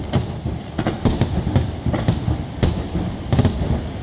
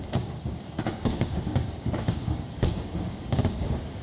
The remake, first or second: second